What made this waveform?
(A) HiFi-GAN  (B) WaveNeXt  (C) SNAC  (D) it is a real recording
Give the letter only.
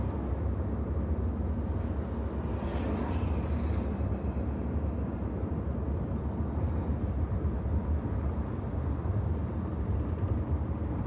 D